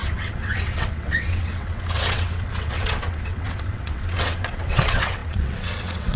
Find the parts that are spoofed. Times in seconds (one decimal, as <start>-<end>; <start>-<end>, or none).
0.0-6.2